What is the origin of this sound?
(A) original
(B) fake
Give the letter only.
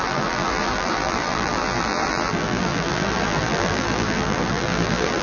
B